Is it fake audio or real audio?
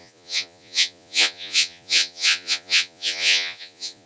fake